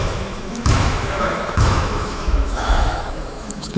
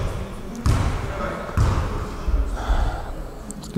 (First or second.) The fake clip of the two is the first